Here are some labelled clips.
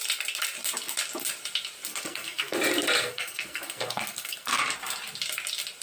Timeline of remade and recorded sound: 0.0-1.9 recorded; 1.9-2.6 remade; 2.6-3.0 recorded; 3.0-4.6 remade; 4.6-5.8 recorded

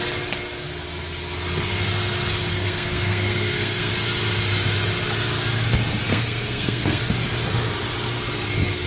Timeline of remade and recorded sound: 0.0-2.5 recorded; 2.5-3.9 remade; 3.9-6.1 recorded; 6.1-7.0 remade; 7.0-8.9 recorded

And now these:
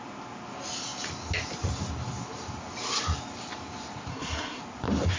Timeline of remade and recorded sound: 0.0-4.1 recorded; 4.1-4.6 remade; 4.6-5.2 recorded

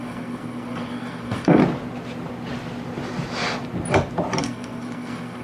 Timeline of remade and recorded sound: 0.0-1.6 remade; 1.6-4.4 recorded; 4.4-5.4 remade

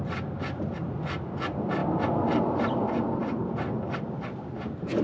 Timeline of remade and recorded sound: 0.0-5.0 recorded